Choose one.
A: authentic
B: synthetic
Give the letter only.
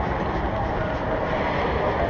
A